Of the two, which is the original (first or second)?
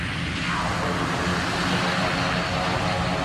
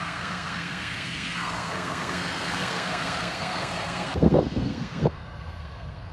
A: first